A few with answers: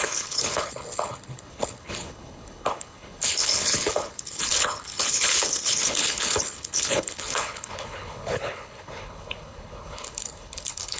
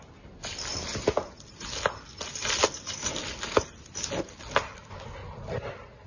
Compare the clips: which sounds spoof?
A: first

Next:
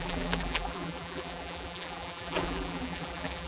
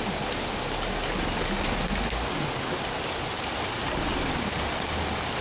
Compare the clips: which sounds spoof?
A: first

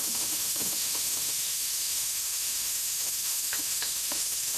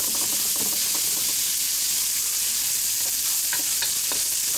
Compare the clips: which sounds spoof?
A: first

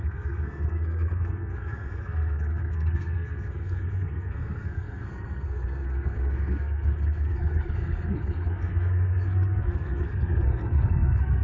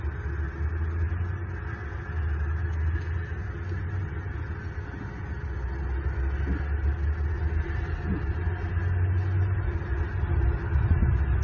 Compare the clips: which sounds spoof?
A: first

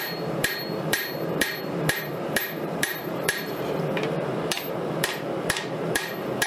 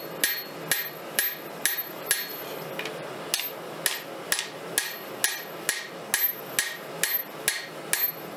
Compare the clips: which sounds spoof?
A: first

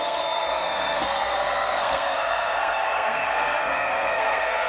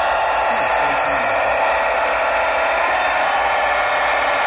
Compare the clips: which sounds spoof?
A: first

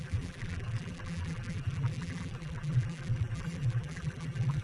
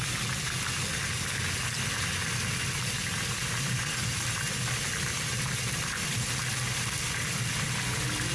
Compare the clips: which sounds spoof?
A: first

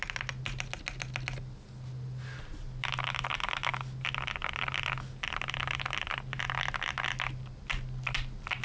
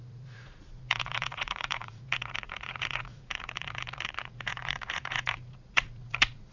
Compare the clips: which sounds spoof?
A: second